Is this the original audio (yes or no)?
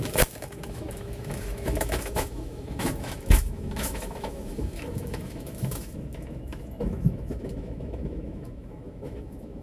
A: no